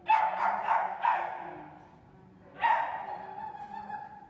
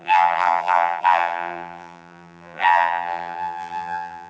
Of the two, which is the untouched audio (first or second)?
first